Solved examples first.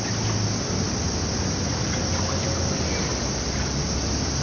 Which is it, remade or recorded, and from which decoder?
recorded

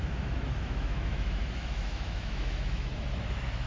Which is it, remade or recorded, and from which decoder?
remade, autoencoder, DAC-VAE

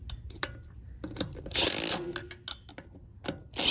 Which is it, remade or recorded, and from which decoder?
recorded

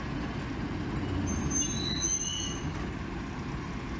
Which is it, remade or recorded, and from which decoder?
recorded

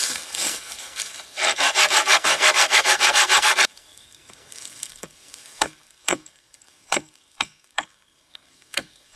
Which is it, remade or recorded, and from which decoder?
remade, codec, SNAC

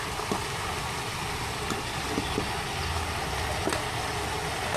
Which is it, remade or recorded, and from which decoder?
recorded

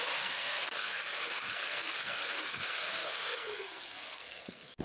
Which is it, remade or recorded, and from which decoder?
remade, codec, SNAC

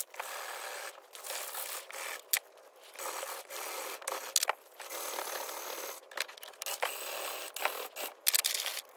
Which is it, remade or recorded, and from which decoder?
recorded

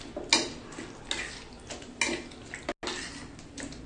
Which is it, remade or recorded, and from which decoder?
recorded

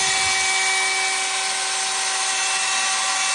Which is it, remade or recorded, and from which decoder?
recorded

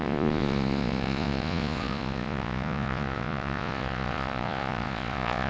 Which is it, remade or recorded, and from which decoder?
remade, vocoder, Vocos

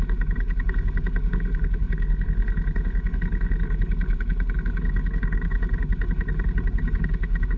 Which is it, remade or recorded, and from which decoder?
remade, codec, HILCodec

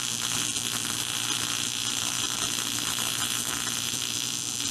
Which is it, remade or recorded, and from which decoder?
remade, vocoder, BigVGAN v2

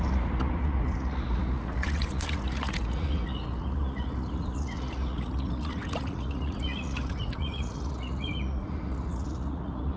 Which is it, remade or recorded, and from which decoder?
remade, vocoder, Vocos